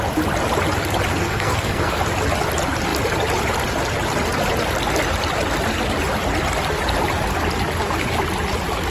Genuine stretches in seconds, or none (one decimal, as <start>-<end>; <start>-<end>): 0.0-1.1; 2.0-8.9